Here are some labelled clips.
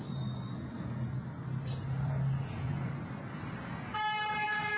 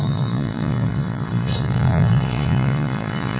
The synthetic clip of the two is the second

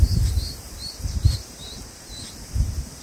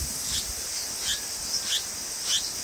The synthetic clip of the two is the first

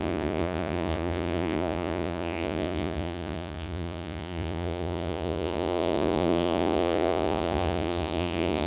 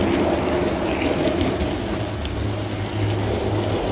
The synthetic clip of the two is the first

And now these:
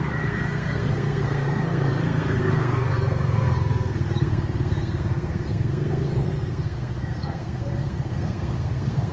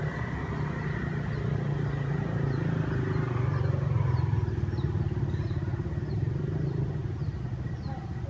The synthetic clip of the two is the first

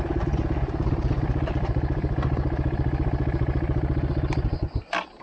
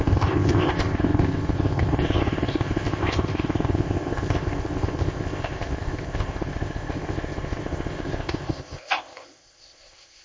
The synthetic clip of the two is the second